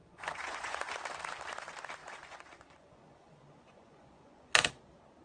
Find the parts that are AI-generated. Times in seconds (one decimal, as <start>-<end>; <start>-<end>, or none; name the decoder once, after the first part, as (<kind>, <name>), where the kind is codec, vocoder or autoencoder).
0.0-0.9 (vocoder, Vocos); 2.0-4.7